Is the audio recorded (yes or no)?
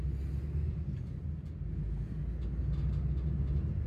yes